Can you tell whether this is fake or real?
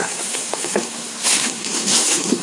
fake